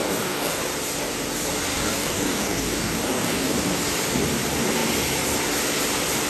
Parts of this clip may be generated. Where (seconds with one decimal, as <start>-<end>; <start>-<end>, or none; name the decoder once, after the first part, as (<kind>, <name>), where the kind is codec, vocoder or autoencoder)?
0.0-0.6 (codec, DAC); 1.7-3.6